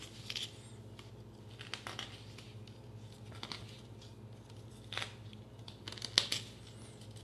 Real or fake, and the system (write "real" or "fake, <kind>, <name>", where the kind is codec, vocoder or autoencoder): real